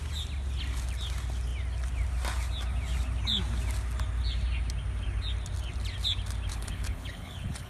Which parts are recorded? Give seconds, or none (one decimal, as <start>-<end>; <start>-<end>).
0.0-6.5